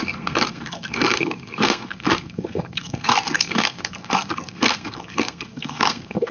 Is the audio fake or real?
fake